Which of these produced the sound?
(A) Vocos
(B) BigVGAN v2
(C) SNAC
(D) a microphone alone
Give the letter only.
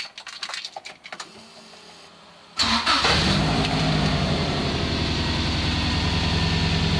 D